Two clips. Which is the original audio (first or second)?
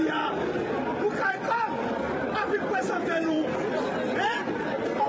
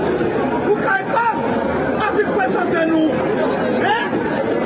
second